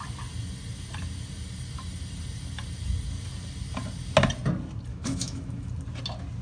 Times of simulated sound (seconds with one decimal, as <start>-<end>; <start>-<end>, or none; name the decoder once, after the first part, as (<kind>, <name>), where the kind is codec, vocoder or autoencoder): 4.9-5.7 (autoencoder, DAC-VAE)